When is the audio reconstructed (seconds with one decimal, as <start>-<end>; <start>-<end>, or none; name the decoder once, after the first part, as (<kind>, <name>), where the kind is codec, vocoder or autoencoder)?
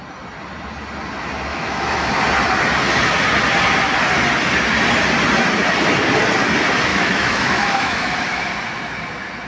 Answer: 1.5-2.1 (autoencoder, DAC-VAE); 6.9-8.5